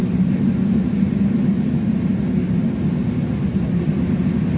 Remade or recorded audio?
recorded